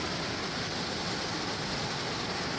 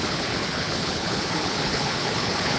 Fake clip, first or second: second